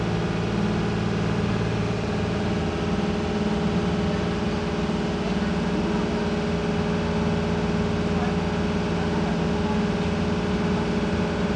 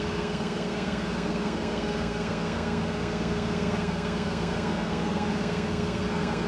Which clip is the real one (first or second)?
first